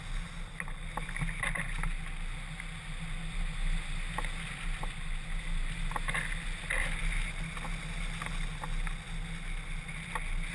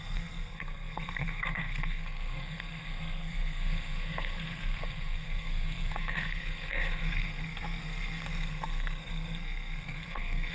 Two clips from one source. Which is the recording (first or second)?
first